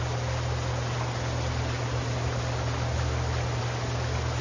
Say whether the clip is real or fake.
real